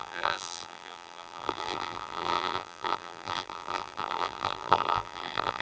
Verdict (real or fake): fake